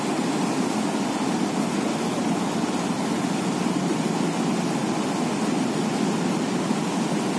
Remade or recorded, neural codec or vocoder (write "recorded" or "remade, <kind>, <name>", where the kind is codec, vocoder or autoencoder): recorded